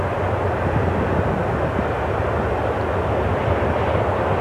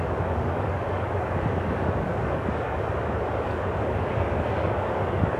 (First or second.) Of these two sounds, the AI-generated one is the second